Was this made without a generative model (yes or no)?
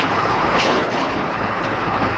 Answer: no